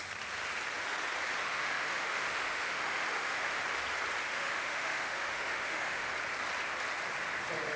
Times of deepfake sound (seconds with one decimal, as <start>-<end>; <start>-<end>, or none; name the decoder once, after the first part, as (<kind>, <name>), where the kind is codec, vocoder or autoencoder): 1.4-3.6 (autoencoder, DAC-VAE); 4.2-6.1